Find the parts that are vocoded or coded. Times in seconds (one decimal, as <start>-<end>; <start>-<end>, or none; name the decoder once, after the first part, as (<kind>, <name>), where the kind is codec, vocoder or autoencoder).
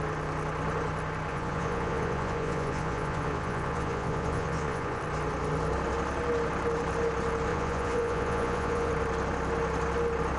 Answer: 1.3-5.0 (vocoder, Vocos); 7.5-8.9